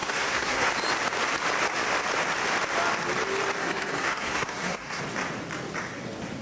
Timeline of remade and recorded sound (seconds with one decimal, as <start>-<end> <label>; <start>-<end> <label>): 0.0-0.7 remade; 0.7-3.6 recorded; 3.6-5.0 remade; 5.0-6.4 recorded